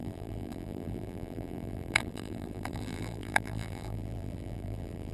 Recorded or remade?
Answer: remade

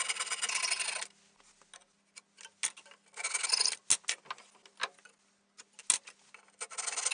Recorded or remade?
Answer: recorded